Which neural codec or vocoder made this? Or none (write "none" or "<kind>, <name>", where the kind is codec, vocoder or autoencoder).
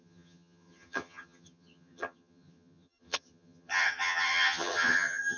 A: vocoder, HiFi-GAN